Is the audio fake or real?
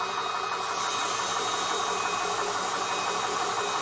real